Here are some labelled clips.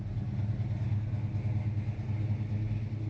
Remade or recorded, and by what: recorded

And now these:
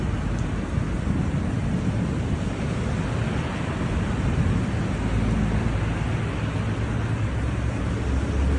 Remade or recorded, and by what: recorded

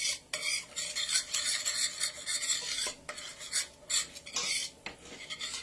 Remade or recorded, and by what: recorded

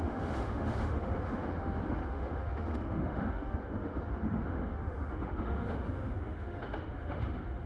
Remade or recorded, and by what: remade, autoencoder, DAC-VAE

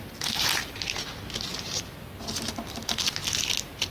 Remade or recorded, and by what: recorded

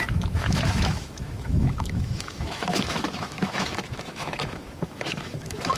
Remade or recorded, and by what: remade, autoencoder, DAC-VAE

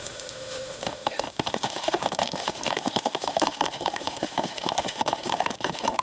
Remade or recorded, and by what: remade, autoencoder, DAC-VAE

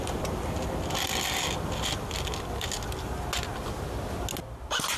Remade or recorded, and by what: recorded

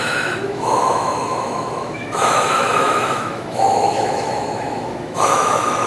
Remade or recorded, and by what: remade, autoencoder, DAC-VAE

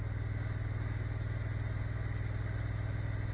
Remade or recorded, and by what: recorded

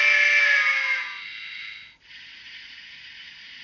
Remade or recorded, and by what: recorded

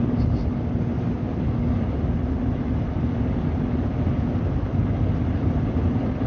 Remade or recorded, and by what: recorded